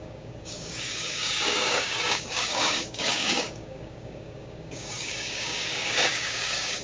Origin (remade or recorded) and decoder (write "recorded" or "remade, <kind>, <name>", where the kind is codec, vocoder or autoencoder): remade, codec, DAC